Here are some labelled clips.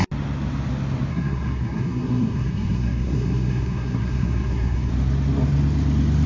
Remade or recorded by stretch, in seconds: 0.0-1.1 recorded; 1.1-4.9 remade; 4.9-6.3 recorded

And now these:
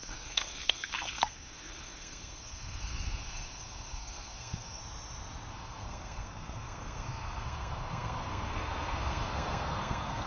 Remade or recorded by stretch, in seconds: 0.0-4.8 remade; 4.8-5.5 recorded; 5.5-10.3 remade

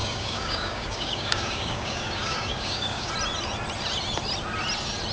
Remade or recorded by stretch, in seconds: 0.0-3.1 remade; 3.1-5.1 recorded

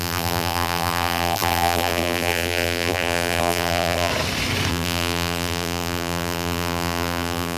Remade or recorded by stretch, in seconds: 0.0-4.1 remade; 4.1-4.7 recorded; 4.7-7.6 remade